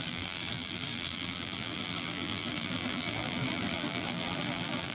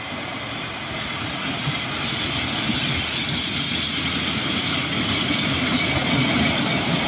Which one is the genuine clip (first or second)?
second